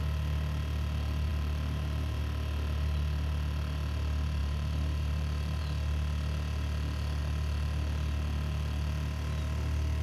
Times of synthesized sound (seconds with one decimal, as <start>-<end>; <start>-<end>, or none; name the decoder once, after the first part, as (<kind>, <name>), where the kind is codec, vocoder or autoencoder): 1.3-2.2 (vocoder, BigVGAN v2); 4.4-5.6